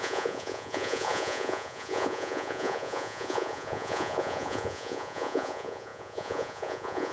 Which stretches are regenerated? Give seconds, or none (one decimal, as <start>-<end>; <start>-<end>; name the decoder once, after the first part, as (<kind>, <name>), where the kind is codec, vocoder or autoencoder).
0.0-7.1 (vocoder, Vocos)